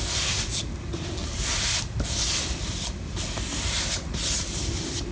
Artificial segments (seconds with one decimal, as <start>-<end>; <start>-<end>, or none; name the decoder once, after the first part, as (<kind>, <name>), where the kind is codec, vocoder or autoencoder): none

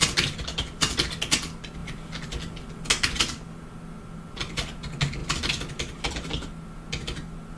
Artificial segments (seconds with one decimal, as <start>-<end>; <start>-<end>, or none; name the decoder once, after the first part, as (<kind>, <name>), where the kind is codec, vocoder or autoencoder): none

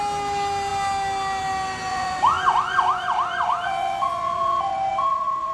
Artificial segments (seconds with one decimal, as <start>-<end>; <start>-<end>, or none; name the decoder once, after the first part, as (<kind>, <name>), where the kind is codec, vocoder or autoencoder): 1.9-5.5 (vocoder, Vocos)

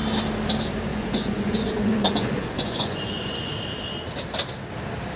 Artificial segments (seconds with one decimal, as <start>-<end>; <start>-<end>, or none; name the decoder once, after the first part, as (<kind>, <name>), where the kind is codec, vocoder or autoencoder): 0.9-3.5 (vocoder, Vocos)